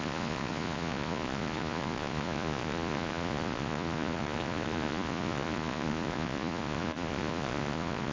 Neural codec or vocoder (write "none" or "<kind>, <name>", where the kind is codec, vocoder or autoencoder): vocoder, Vocos